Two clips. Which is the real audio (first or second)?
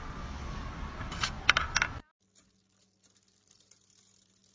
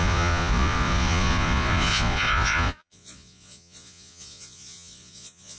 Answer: first